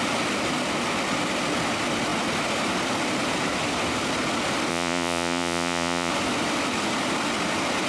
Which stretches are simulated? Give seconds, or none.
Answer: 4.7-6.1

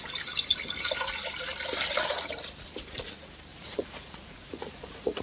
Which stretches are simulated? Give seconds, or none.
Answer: 3.5-5.2